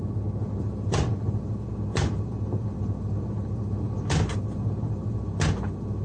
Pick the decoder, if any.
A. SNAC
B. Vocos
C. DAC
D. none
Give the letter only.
D